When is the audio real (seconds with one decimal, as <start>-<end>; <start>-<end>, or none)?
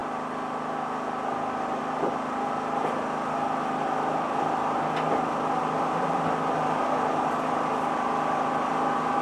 0.0-9.2